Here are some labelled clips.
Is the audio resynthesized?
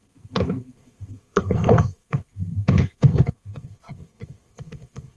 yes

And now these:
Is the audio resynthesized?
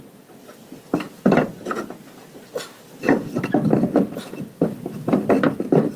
no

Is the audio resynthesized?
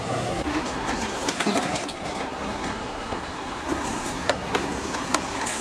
yes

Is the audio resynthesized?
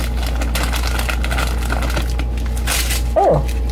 no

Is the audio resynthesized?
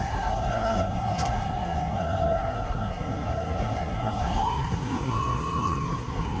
yes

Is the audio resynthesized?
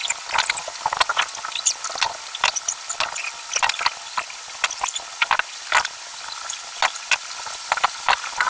no